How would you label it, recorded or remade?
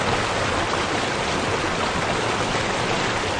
recorded